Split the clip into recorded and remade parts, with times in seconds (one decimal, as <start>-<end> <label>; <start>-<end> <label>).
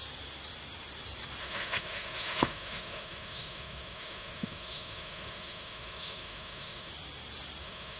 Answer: 0.0-1.4 recorded; 1.4-6.9 remade; 6.9-7.6 recorded; 7.6-8.0 remade